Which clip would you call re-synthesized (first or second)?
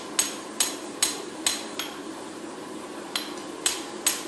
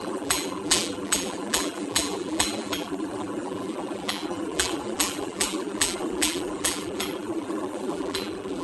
second